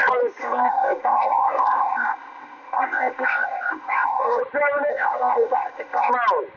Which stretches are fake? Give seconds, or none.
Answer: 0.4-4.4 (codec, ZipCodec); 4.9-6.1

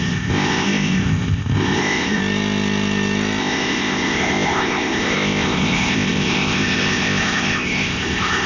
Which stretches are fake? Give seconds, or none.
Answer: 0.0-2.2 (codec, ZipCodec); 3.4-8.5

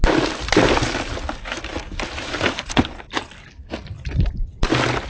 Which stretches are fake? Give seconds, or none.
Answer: none